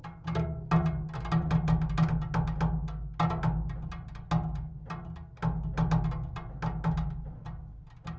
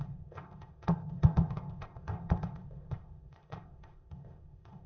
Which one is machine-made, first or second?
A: second